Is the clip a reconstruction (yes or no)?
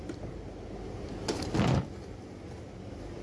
no